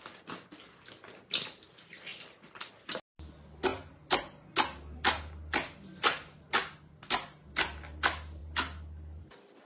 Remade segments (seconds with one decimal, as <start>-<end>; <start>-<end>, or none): none